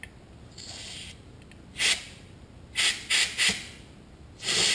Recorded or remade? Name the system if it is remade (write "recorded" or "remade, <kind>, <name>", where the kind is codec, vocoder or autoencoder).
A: recorded